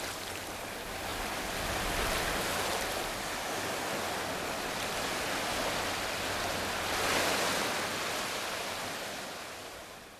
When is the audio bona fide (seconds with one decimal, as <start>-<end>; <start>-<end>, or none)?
0.0-10.2